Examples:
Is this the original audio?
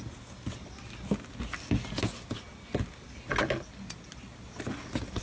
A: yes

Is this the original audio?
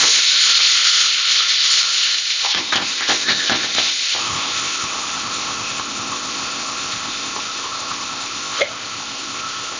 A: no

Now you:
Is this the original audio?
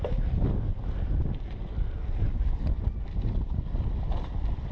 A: yes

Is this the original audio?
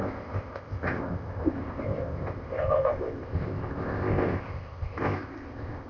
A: no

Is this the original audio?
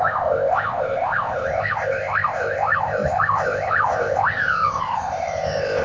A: no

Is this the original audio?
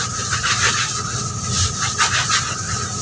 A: yes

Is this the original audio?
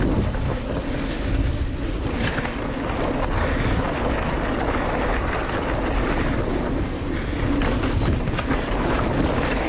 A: yes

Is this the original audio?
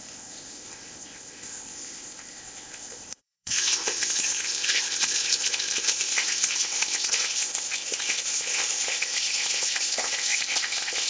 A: no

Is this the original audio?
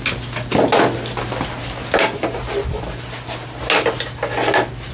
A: yes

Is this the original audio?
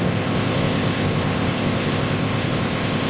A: no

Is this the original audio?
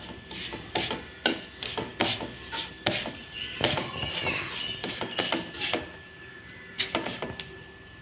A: yes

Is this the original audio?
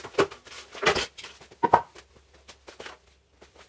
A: yes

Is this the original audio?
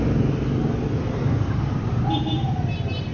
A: yes